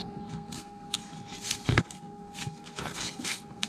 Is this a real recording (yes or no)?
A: no